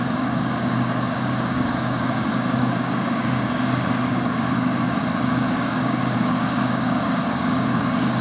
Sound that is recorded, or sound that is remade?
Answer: remade